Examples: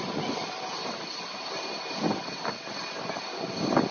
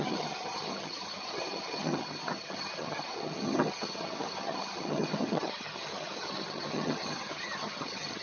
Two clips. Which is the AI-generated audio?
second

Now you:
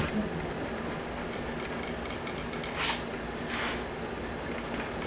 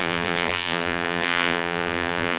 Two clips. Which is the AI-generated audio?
second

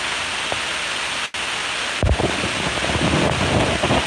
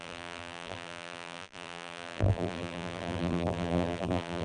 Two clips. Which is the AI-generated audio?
second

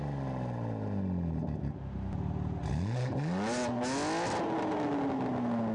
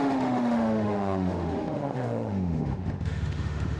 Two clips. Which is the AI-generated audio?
second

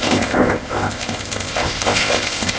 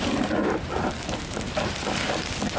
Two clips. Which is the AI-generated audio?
first